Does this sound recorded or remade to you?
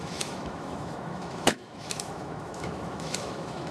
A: remade